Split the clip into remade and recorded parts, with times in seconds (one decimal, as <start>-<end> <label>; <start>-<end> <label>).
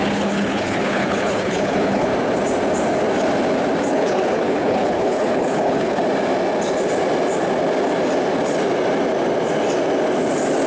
0.0-2.1 remade; 2.1-3.9 recorded; 3.9-6.0 remade; 6.0-10.7 recorded